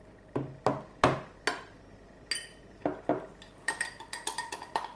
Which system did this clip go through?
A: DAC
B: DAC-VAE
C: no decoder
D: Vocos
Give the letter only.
C